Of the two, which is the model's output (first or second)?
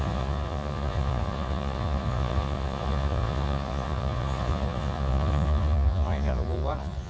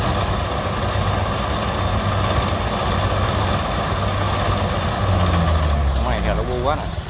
first